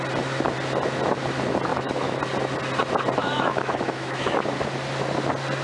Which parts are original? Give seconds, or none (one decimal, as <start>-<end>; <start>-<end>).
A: 0.0-1.7; 2.2-3.2; 4.4-5.6